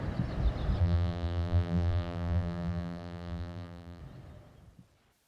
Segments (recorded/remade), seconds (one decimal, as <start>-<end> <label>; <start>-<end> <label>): 0.0-0.8 recorded; 0.8-4.0 remade; 4.0-5.3 recorded